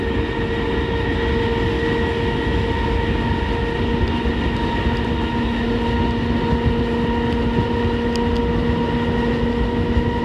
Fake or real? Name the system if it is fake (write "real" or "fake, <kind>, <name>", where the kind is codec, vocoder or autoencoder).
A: real